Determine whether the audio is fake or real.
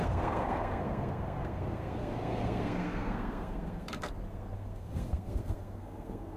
fake